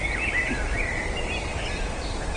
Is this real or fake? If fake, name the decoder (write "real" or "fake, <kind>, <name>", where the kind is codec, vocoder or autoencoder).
real